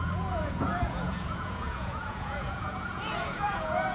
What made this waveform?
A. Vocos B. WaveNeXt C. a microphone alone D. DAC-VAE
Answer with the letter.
A